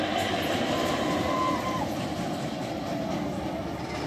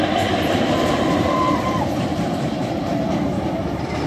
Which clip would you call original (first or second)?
first